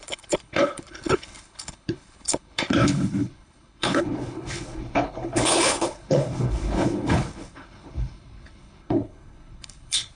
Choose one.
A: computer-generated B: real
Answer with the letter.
A